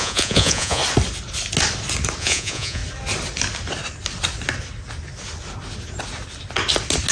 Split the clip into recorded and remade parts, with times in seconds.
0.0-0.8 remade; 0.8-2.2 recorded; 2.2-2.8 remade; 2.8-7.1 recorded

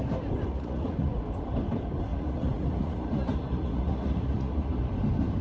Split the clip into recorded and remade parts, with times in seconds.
0.0-0.5 recorded; 0.5-1.1 remade; 1.1-2.1 recorded; 2.1-4.9 remade; 4.9-5.4 recorded

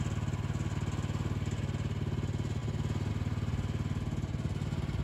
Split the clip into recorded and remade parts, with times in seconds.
0.0-5.0 recorded

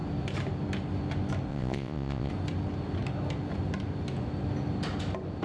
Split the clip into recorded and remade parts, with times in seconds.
0.0-1.5 recorded; 1.5-2.3 remade; 2.3-5.4 recorded

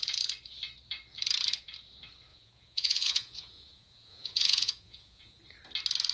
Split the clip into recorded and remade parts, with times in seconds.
0.0-2.3 recorded; 2.3-5.4 remade; 5.4-6.1 recorded

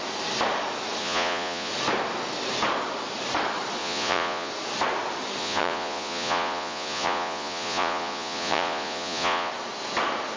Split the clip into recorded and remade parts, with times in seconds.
0.0-1.0 recorded; 1.0-1.7 remade; 1.7-3.8 recorded; 3.8-4.5 remade; 4.5-5.4 recorded; 5.4-9.5 remade; 9.5-10.4 recorded